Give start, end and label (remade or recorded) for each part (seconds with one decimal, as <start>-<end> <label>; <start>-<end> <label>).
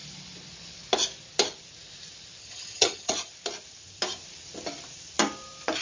0.0-2.4 recorded; 2.4-3.3 remade; 3.3-5.8 recorded